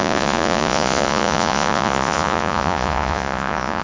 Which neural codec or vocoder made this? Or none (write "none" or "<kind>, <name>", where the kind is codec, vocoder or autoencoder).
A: vocoder, Vocos